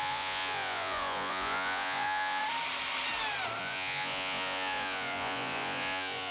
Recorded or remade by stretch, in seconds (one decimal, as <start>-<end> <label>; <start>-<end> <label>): 0.0-2.4 remade; 2.4-3.6 recorded; 3.6-6.3 remade